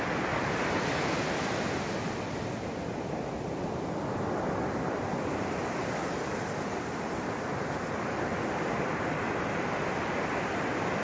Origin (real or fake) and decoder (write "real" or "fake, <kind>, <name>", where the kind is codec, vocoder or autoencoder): real